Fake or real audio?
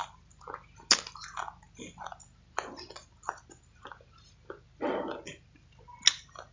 real